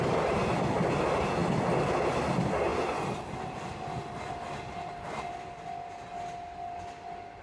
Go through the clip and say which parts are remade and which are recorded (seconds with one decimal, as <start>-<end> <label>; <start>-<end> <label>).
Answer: 0.0-7.4 recorded